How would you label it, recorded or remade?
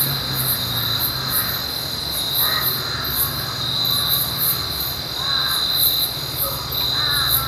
recorded